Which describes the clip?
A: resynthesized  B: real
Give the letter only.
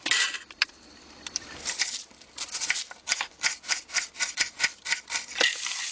A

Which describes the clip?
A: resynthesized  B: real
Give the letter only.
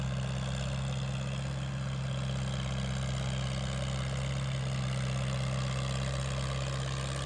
A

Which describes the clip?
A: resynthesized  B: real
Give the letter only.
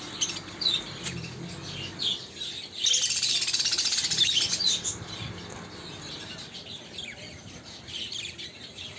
B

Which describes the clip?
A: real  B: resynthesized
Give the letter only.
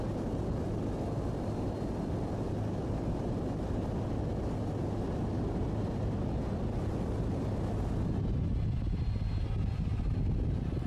A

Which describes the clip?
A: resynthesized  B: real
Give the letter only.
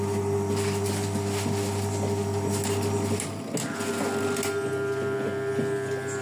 B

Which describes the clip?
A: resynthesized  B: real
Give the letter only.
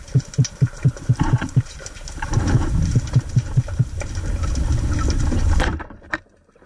A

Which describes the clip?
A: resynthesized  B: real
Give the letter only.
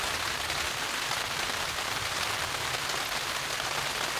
B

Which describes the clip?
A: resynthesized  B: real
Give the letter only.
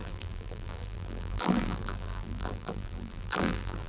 A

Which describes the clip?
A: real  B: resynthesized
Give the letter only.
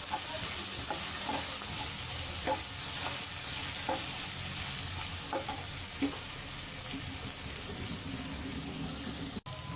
A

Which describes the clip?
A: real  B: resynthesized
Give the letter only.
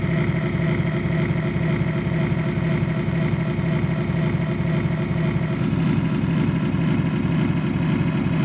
A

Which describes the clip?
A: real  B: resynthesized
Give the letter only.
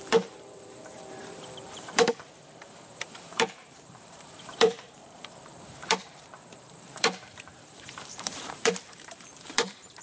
B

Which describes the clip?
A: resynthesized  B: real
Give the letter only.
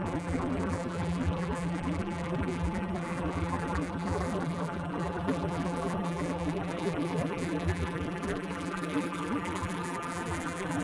A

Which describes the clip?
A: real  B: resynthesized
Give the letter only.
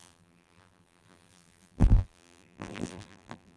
B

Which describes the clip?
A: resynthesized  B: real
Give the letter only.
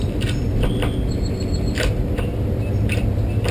B